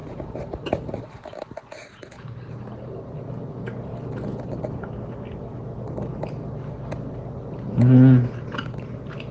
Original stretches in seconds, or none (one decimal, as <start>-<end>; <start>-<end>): 1.1-9.3